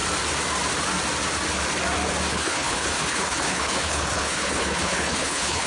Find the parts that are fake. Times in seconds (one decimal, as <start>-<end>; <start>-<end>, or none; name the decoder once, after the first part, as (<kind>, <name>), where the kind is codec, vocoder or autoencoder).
2.3-5.7 (codec, HILCodec)